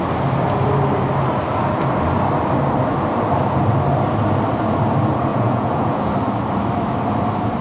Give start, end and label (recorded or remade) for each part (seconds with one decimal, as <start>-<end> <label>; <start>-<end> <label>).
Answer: 0.0-5.3 recorded; 5.3-6.1 remade; 6.1-7.6 recorded